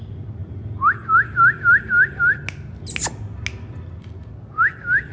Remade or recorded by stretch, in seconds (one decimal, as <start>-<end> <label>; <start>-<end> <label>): 0.0-5.1 recorded